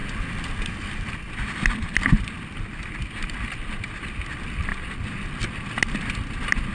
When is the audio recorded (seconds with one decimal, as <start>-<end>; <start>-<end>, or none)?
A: 0.0-6.7